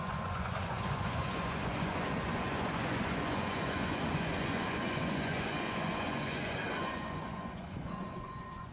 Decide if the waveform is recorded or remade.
remade